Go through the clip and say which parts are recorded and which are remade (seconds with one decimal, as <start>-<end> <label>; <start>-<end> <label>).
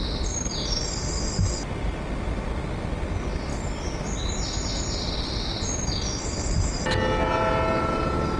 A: 0.0-8.4 recorded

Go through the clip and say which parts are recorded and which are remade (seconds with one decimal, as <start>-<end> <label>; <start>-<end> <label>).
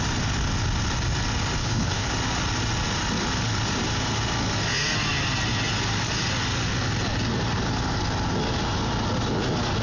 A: 0.0-1.6 recorded; 1.6-2.1 remade; 2.1-9.8 recorded